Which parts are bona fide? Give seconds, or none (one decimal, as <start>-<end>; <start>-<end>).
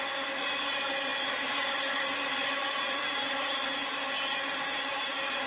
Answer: 0.0-5.5